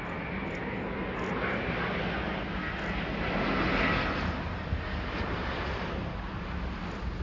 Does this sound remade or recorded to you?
recorded